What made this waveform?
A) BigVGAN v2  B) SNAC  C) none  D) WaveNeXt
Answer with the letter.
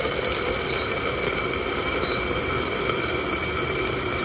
C